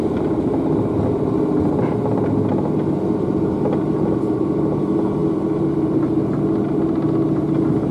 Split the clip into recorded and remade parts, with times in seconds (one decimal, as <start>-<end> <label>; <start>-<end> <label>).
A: 0.0-7.9 recorded